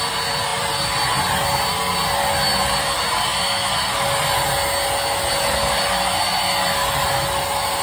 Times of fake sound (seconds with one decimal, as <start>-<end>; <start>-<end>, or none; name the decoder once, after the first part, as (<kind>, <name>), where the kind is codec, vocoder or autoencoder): none